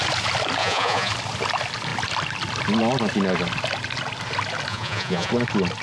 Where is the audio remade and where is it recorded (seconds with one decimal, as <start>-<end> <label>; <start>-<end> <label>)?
0.0-0.6 recorded; 0.6-1.1 remade; 1.1-4.7 recorded; 4.7-5.3 remade; 5.3-5.8 recorded